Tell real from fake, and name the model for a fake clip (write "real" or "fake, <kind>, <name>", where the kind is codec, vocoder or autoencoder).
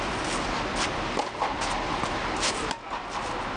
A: real